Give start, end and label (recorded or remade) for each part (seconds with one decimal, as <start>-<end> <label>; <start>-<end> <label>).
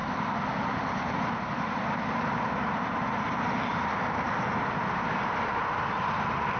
0.0-4.0 remade; 4.0-6.6 recorded